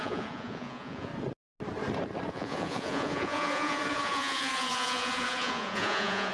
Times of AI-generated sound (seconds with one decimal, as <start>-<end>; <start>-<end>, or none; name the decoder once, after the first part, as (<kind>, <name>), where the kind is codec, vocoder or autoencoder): 0.0-1.1 (vocoder, Vocos); 2.3-6.3